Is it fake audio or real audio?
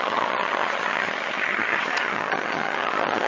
fake